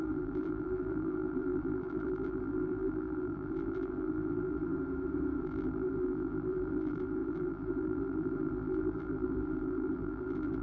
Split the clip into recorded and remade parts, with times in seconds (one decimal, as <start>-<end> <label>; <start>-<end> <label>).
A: 0.0-4.7 remade; 4.7-5.4 recorded; 5.4-10.6 remade